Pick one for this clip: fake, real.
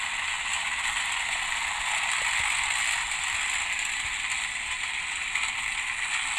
real